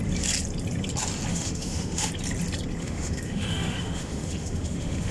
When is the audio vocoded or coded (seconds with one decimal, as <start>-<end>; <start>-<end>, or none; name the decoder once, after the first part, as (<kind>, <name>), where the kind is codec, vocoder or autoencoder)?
1.3-2.1 (autoencoder, DAC-VAE); 2.8-5.1